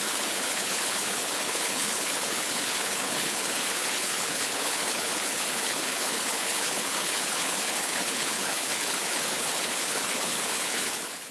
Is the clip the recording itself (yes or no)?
no